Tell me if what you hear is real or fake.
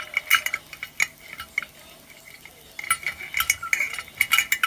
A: real